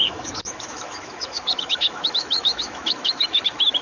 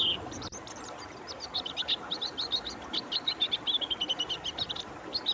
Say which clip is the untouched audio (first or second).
second